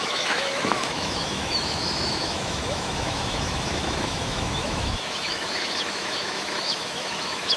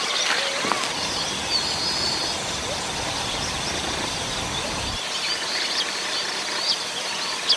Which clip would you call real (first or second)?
second